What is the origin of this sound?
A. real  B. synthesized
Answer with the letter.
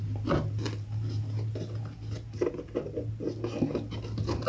A